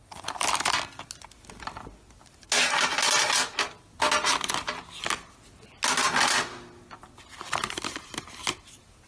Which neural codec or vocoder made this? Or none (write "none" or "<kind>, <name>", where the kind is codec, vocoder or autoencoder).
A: none